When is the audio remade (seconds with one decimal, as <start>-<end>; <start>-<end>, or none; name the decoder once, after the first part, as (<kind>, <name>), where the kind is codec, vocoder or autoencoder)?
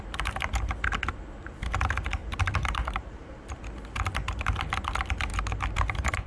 2.2-3.5 (vocoder, BigVGAN v2); 5.3-6.3